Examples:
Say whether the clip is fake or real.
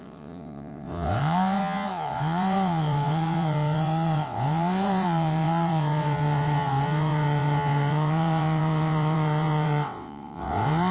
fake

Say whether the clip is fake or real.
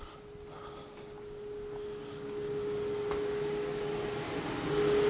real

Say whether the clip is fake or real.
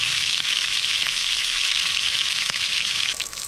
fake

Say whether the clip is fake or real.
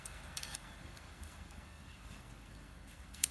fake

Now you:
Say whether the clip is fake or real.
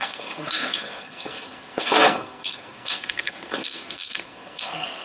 fake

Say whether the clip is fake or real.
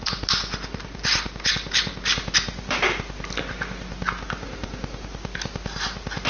real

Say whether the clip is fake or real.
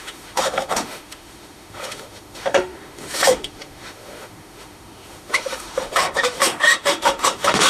fake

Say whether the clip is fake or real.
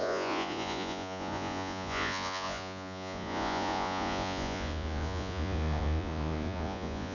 fake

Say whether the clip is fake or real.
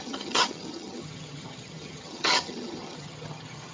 fake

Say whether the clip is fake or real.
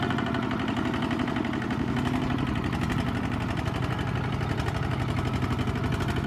real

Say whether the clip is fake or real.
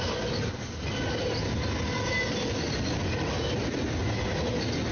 real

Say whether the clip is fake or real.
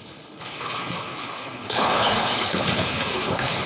fake